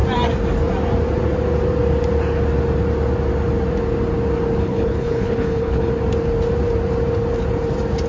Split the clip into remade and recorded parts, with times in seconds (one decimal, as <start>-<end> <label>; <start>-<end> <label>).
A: 0.0-4.6 recorded; 4.6-5.9 remade; 5.9-8.1 recorded